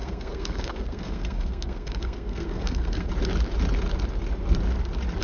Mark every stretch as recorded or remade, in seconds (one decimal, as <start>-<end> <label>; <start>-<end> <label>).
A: 0.0-3.1 remade; 3.1-5.2 recorded